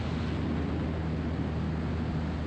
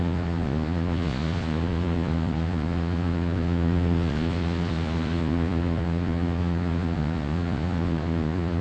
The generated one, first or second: second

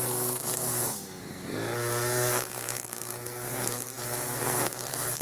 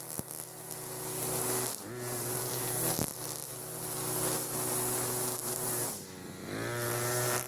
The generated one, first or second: first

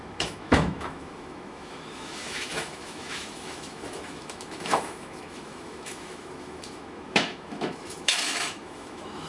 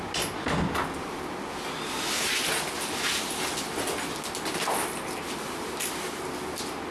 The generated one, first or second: first